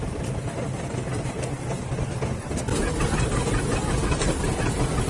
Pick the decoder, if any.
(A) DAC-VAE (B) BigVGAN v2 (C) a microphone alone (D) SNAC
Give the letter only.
C